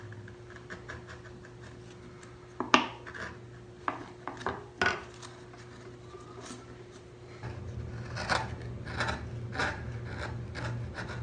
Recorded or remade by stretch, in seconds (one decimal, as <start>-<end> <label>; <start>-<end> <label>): 0.0-11.2 recorded